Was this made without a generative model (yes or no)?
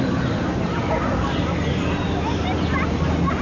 yes